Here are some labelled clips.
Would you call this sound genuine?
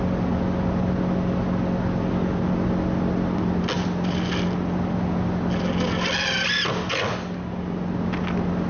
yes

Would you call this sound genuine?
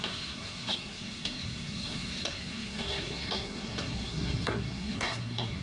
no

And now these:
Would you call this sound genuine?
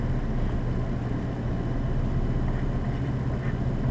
yes